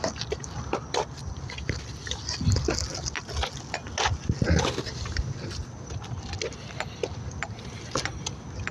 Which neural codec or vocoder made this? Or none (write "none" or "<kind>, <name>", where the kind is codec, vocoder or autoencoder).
none